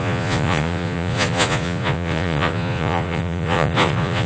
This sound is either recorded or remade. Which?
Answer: remade